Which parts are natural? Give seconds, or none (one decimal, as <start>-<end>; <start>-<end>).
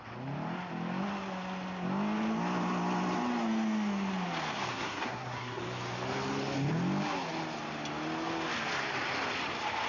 0.0-4.7; 5.6-9.9